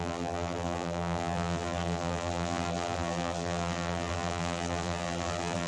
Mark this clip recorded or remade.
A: remade